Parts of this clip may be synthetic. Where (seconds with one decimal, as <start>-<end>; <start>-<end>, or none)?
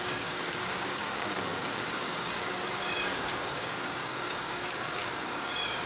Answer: 0.0-5.9